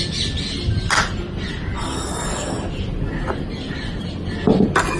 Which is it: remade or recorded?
recorded